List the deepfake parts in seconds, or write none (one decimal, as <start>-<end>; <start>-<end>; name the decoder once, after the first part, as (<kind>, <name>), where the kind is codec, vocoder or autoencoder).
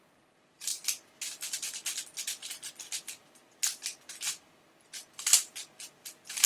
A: none